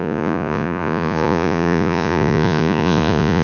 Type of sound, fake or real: fake